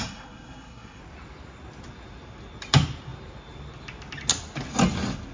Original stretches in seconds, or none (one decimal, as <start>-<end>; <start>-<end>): 1.0-5.3